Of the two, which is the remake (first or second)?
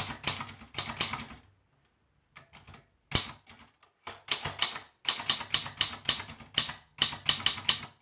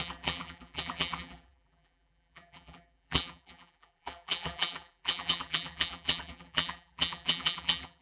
second